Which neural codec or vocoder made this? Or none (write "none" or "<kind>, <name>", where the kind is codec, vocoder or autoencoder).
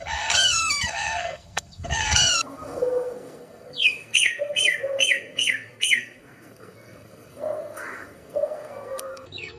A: codec, SNAC